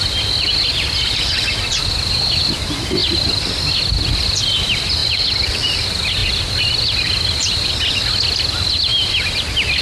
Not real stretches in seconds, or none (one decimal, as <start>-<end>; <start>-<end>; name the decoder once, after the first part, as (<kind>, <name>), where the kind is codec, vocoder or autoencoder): none